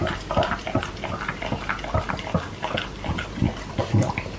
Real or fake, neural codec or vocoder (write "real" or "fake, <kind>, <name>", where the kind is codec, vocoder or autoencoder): real